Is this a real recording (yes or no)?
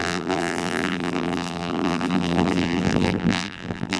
no